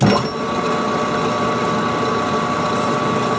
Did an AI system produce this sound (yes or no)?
no